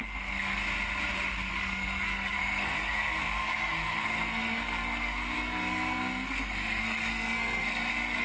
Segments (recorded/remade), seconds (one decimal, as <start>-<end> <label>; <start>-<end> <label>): 0.0-0.6 remade; 0.6-1.5 recorded; 1.5-8.2 remade